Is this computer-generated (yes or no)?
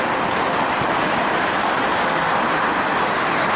no